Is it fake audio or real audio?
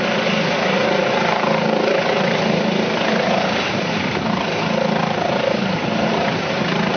real